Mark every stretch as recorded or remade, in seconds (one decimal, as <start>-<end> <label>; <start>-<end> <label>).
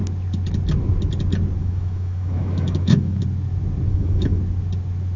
0.0-1.6 recorded; 1.6-3.2 remade; 3.2-3.9 recorded; 3.9-4.4 remade; 4.4-5.2 recorded